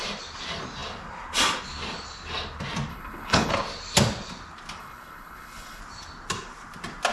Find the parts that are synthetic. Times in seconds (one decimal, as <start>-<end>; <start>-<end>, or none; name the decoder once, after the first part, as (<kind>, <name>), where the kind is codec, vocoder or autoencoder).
2.9-3.5 (codec, HILCodec); 4.8-5.8